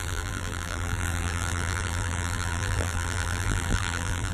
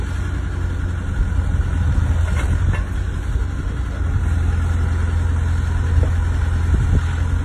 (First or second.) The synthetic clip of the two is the first